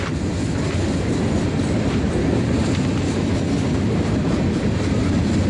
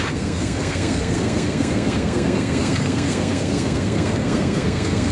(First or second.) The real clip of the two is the first